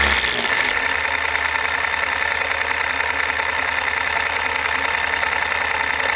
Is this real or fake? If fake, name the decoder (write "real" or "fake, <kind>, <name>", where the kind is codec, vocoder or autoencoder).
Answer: real